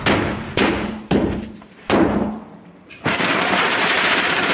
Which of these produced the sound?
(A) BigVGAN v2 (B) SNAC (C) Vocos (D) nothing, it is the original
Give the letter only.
A